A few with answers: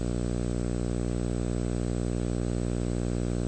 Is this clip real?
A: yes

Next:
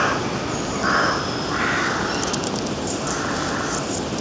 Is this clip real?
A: yes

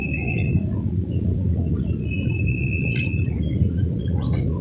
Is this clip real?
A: no